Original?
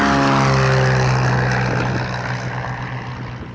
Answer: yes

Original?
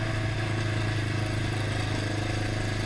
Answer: yes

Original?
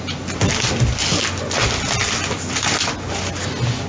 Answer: yes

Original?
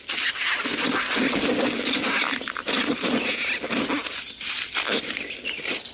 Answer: yes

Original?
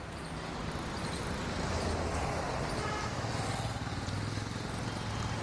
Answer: yes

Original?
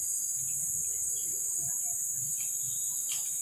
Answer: yes